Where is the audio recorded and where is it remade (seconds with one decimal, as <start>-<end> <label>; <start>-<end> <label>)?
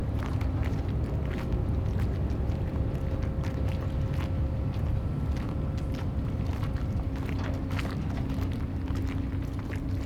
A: 0.0-0.6 remade; 0.6-10.1 recorded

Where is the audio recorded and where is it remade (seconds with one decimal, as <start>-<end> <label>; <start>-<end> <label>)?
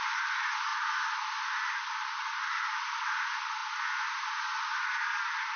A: 0.0-5.6 recorded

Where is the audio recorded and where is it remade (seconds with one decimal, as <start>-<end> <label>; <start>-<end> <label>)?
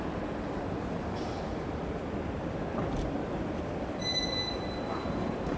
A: 0.0-1.5 recorded; 1.5-3.8 remade; 3.8-5.6 recorded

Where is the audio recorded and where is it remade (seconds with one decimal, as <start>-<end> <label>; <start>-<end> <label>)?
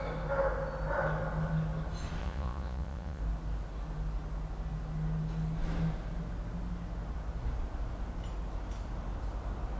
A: 0.0-2.2 recorded; 2.2-3.2 remade; 3.2-9.8 recorded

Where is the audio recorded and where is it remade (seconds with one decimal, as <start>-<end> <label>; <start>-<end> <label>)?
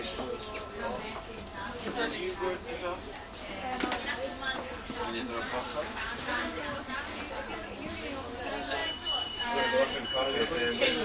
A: 0.0-1.5 recorded; 1.5-2.1 remade; 2.1-5.7 recorded; 5.7-6.6 remade; 6.6-8.8 recorded; 8.8-10.0 remade; 10.0-11.0 recorded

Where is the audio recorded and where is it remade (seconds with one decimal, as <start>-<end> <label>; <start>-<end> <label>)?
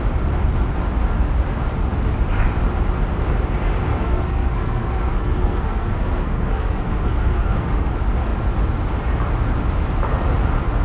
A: 0.0-3.9 recorded; 3.9-7.9 remade; 7.9-10.8 recorded